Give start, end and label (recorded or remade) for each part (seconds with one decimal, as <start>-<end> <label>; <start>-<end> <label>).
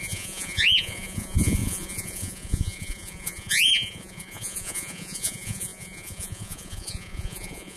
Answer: 0.0-7.8 remade